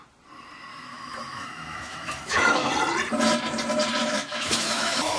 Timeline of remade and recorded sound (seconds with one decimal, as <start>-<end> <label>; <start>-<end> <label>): 0.0-0.7 recorded; 0.7-2.7 remade; 2.7-4.0 recorded; 4.0-5.2 remade

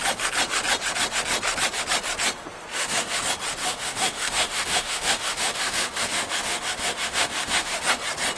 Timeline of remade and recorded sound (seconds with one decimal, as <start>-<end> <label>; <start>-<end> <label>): 0.0-2.7 recorded; 2.7-3.2 remade; 3.2-3.6 recorded; 3.6-7.8 remade; 7.8-8.4 recorded